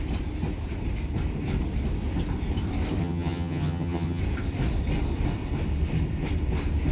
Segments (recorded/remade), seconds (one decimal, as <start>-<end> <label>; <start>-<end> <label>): 0.0-3.0 recorded; 3.0-4.2 remade; 4.2-6.9 recorded